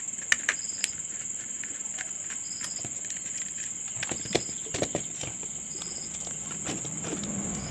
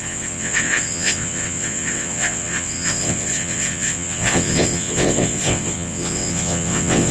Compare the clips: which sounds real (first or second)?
first